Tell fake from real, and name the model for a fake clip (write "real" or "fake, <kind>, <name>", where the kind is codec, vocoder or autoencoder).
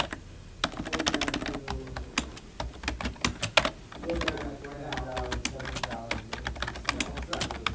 real